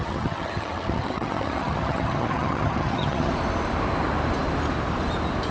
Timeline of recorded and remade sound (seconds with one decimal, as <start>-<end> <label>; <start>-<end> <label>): 0.0-3.3 remade; 3.3-5.5 recorded

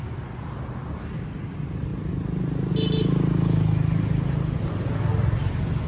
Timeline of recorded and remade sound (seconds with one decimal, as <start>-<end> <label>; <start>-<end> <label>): 0.0-5.9 recorded

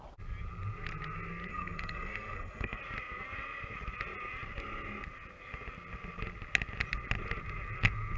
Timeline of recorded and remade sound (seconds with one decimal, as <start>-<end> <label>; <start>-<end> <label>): 0.0-1.5 recorded; 1.5-2.8 remade; 2.8-8.2 recorded

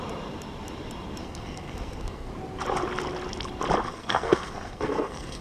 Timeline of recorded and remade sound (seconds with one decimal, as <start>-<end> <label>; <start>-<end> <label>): 0.0-1.2 recorded; 1.2-2.3 remade; 2.3-3.9 recorded; 3.9-5.4 remade

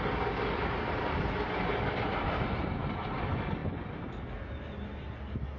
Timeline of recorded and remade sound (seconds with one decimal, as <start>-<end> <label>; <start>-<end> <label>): 0.0-2.1 recorded; 2.1-2.7 remade; 2.7-5.6 recorded